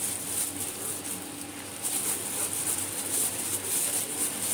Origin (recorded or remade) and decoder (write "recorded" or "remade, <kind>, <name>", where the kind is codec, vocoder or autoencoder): recorded